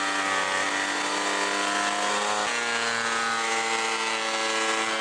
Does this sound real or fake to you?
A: real